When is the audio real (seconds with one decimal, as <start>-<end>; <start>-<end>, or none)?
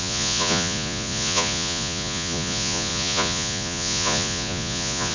none